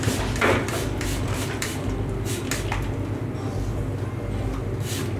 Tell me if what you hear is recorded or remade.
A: recorded